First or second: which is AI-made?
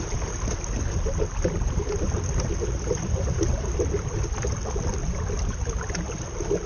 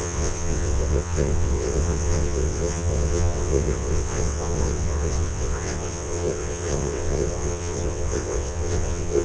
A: second